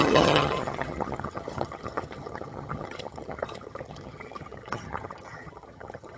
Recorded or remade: remade